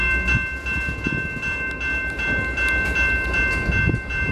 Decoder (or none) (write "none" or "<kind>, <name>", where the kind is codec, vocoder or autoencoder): none